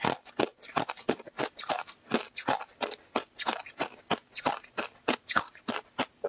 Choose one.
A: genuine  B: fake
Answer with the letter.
A